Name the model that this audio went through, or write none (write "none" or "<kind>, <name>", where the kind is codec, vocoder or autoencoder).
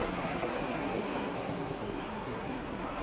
codec, SNAC